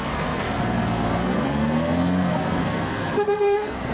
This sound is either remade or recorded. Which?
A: remade